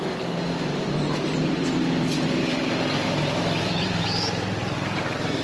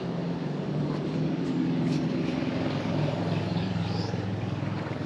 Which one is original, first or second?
first